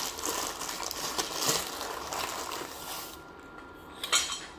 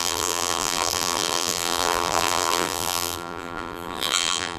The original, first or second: first